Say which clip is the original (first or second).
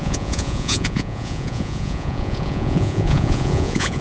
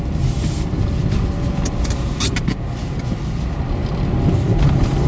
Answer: second